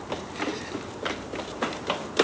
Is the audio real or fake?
real